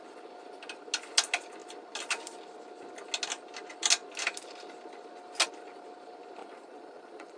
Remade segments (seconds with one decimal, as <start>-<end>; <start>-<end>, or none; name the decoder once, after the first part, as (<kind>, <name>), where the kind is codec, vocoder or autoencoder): 6.4-7.4 (vocoder, Vocos)